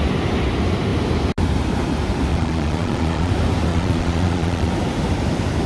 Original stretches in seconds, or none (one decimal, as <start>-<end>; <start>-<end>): 0.0-2.3; 3.3-3.7; 4.7-5.7